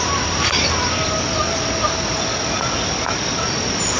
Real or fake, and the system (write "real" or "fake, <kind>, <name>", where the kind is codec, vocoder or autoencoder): real